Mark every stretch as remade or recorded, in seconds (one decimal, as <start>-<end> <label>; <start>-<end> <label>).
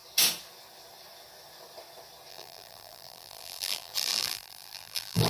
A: 0.0-2.3 recorded; 2.3-5.3 remade